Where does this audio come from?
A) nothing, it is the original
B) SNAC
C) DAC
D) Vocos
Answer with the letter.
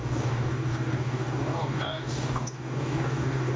C